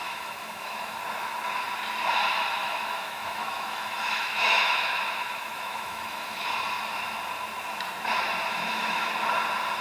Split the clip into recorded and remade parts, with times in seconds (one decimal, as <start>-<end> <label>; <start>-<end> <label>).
0.0-1.0 remade; 1.0-2.6 recorded; 2.6-6.5 remade; 6.5-8.5 recorded; 8.5-9.1 remade; 9.1-9.8 recorded